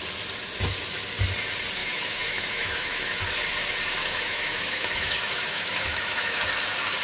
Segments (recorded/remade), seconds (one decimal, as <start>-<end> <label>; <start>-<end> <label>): 0.0-1.8 recorded; 1.8-3.2 remade; 3.2-4.0 recorded; 4.0-6.4 remade; 6.4-7.0 recorded